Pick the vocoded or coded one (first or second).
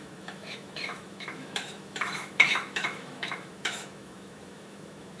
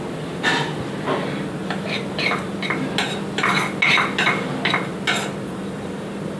first